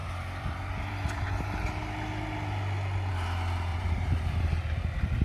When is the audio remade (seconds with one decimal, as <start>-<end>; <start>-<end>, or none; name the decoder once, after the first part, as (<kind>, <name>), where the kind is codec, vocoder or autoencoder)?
3.7-4.6 (vocoder, BigVGAN v2)